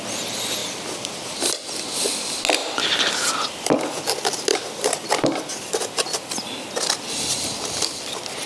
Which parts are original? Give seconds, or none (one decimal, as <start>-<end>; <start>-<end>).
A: 0.0-0.6; 1.4-4.5; 6.3-8.5